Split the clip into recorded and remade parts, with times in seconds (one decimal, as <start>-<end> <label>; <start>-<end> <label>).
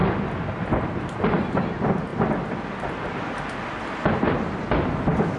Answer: 0.0-5.4 recorded